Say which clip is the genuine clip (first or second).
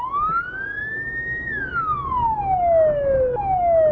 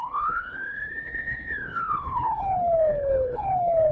first